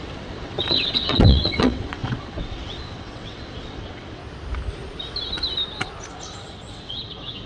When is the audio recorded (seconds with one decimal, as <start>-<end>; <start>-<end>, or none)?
4.2-6.1